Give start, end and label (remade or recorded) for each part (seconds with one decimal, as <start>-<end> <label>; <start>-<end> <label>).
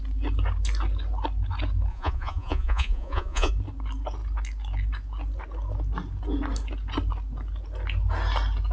0.0-1.9 recorded; 1.9-3.5 remade; 3.5-8.7 recorded